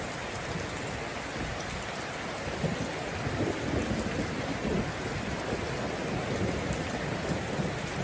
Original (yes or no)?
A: yes